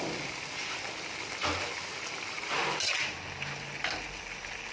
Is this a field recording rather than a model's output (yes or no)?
yes